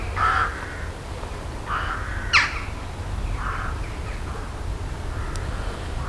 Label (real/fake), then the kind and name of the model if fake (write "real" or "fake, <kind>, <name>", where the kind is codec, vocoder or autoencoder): real